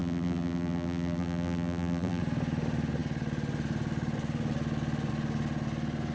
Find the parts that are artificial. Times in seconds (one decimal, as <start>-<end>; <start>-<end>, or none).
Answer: 0.0-2.2